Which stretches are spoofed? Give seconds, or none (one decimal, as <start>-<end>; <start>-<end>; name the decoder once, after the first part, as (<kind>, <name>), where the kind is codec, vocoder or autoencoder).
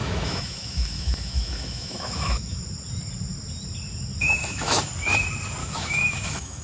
0.0-2.6 (autoencoder, DAC-VAE); 4.2-4.9; 5.6-6.6